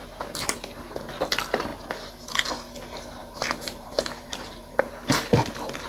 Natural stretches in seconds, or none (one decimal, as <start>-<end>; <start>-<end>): 0.0-3.2; 4.9-5.9